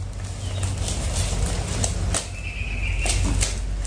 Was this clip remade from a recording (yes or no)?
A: no